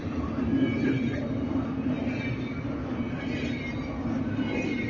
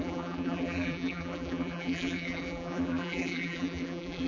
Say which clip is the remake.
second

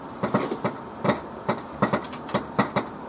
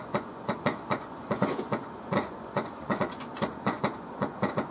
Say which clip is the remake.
second